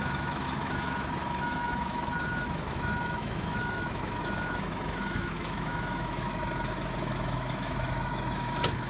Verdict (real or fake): fake